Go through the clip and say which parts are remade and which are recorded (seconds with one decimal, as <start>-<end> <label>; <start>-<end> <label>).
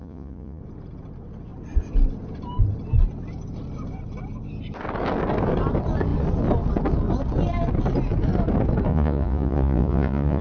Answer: 0.0-0.6 remade; 0.6-8.9 recorded; 8.9-10.4 remade